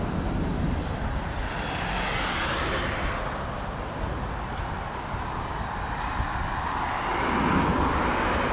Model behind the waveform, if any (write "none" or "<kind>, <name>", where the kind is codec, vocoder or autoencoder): none